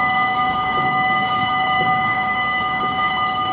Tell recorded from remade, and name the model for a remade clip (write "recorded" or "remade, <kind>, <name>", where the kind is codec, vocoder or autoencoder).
remade, codec, DAC